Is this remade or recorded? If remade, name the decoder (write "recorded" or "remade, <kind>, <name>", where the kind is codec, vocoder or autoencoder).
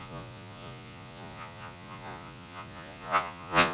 remade, vocoder, Vocos